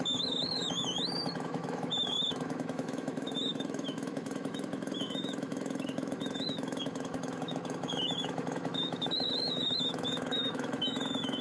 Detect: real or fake fake